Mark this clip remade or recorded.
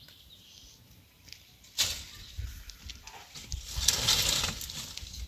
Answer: recorded